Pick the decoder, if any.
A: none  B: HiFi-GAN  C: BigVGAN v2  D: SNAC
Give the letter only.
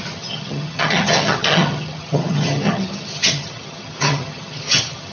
B